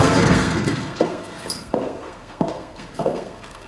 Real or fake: fake